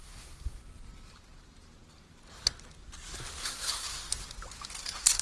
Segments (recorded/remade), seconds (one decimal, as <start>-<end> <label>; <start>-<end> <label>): 0.0-0.6 remade; 0.6-3.4 recorded; 3.4-4.1 remade; 4.1-4.8 recorded; 4.8-5.2 remade